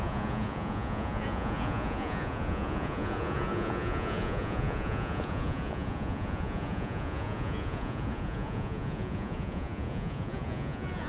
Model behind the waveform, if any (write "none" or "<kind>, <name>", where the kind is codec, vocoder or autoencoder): vocoder, Vocos